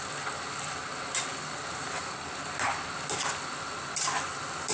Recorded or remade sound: recorded